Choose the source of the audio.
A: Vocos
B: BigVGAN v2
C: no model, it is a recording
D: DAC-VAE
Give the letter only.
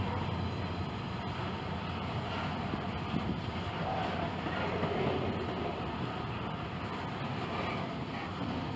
C